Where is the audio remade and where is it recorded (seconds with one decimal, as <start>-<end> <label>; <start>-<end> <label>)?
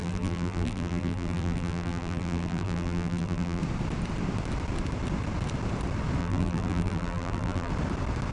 0.0-3.6 remade; 3.6-6.2 recorded; 6.2-7.7 remade; 7.7-8.3 recorded